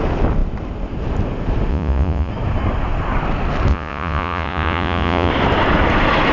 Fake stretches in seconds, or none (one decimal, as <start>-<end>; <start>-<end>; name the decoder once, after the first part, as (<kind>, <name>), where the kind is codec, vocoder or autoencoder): 1.7-2.3 (vocoder, Vocos); 3.7-5.3